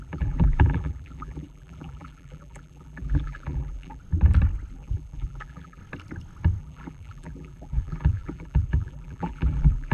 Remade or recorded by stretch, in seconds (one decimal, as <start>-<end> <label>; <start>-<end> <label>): 0.0-4.0 remade; 4.0-4.7 recorded; 4.7-5.8 remade; 5.8-6.6 recorded; 6.6-9.9 remade